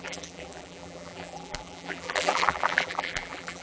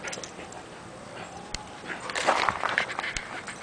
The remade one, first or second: first